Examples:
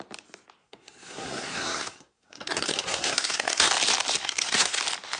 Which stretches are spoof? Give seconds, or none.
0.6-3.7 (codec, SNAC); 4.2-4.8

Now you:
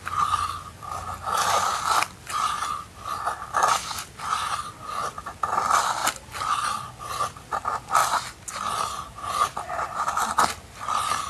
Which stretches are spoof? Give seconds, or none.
none

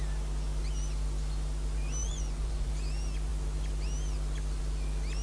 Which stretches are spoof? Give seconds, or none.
2.0-2.7 (vocoder, Vocos)

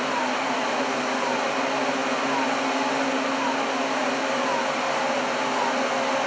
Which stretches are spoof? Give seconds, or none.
none

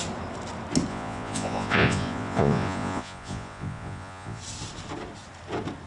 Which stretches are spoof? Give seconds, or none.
0.9-4.4 (vocoder, Vocos)